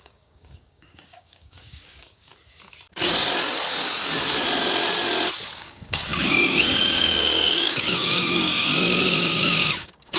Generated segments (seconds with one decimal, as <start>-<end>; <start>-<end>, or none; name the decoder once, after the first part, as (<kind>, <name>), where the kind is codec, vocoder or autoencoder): 0.0-2.3 (codec, DAC); 5.6-10.2